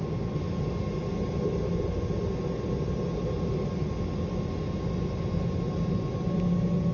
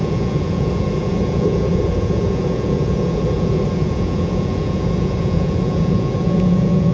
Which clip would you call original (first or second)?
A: first